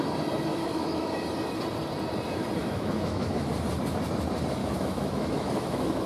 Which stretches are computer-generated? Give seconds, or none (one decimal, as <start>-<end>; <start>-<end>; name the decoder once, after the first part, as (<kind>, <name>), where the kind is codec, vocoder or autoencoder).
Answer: 0.5-1.1 (autoencoder, DAC-VAE); 2.6-3.5; 4.6-6.1